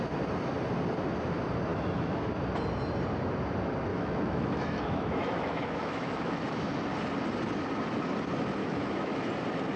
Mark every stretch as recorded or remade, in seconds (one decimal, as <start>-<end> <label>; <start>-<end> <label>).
0.0-1.7 recorded; 1.7-2.3 remade; 2.3-3.9 recorded; 3.9-6.8 remade; 6.8-8.6 recorded; 8.6-9.3 remade; 9.3-9.8 recorded

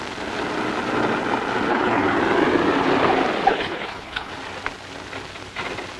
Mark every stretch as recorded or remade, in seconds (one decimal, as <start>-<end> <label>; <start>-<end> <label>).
0.0-1.7 recorded; 1.7-2.2 remade; 2.2-3.5 recorded; 3.5-4.3 remade; 4.3-6.0 recorded